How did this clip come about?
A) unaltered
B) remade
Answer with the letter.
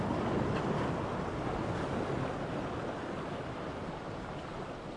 A